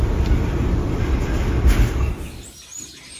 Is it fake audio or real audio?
fake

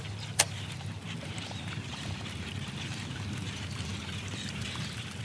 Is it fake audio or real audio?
fake